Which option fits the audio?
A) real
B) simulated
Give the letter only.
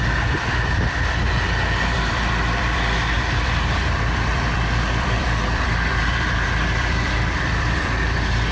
B